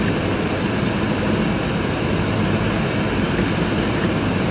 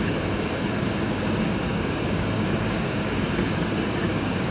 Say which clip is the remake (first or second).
second